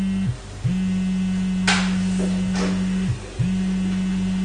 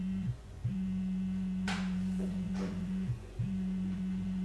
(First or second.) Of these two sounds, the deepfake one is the second